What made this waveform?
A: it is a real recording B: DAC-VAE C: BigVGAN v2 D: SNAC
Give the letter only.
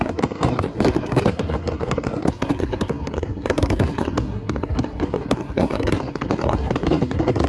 D